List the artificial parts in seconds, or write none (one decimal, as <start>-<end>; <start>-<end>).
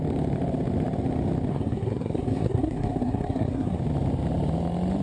1.5-3.8